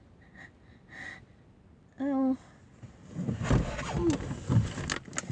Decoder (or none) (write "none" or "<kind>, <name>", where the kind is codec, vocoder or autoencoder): none